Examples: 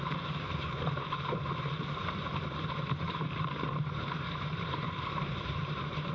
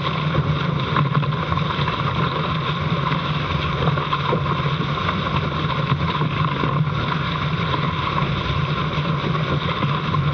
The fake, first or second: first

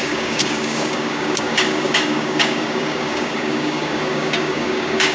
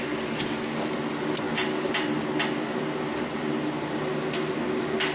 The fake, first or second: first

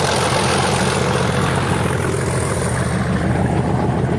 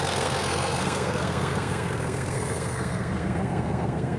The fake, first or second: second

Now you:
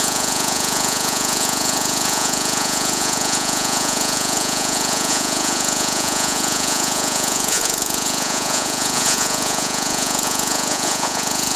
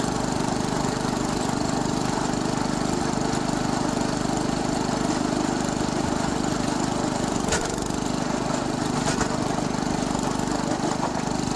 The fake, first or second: first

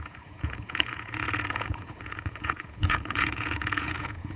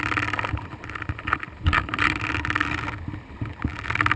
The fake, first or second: first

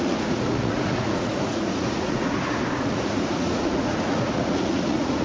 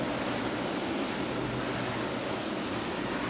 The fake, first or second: first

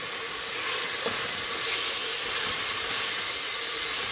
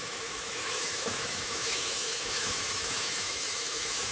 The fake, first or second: second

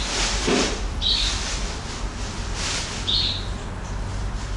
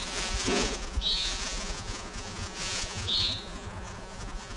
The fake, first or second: second